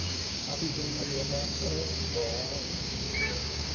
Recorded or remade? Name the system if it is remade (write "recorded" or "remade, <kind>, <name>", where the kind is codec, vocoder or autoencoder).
remade, codec, DAC